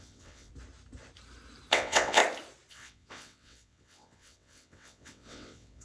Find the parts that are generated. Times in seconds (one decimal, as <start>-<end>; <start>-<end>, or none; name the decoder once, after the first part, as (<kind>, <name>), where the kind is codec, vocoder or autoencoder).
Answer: 0.0-0.5 (vocoder, WaveNeXt); 1.7-2.2; 2.7-5.8